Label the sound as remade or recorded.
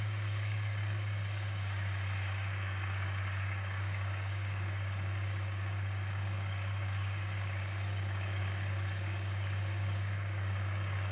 remade